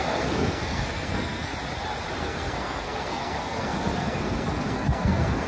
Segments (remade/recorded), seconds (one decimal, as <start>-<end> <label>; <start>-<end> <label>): 0.0-1.5 remade; 1.5-2.2 recorded; 2.2-5.5 remade